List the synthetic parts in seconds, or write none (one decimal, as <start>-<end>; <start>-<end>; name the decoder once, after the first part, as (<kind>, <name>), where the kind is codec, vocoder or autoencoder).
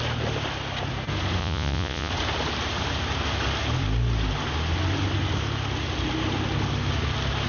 1.4-2.1 (vocoder, Vocos)